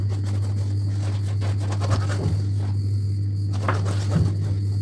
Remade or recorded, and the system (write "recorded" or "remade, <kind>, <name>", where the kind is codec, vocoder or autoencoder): recorded